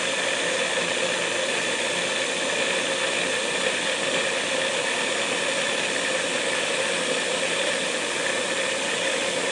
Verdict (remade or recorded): recorded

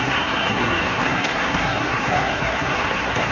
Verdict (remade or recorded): remade